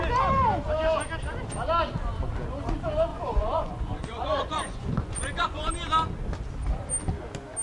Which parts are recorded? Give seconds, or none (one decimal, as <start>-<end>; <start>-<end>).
0.0-3.1; 5.7-7.6